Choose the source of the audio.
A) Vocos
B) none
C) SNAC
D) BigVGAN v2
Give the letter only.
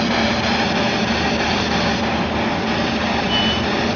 B